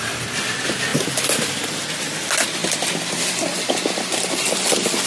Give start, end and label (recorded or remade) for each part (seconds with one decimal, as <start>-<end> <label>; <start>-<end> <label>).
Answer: 0.0-5.1 recorded